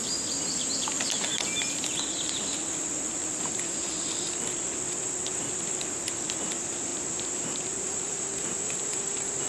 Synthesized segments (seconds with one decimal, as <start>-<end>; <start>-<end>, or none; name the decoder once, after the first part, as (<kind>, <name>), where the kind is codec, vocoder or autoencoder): 6.9-8.8 (vocoder, BigVGAN v2)